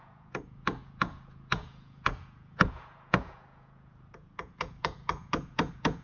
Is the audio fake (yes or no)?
yes